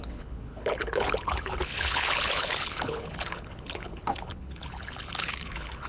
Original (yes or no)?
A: no